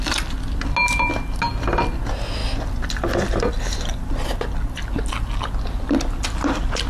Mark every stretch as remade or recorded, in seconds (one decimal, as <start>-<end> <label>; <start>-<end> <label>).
0.0-6.9 recorded